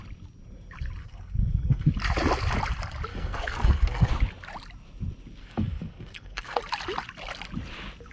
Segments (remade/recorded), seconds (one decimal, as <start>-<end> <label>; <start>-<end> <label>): 0.0-1.0 recorded; 1.0-1.9 remade; 1.9-3.1 recorded; 3.1-4.1 remade; 4.1-5.4 recorded; 5.4-6.6 remade; 6.6-8.1 recorded